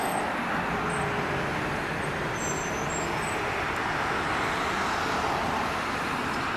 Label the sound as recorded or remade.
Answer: recorded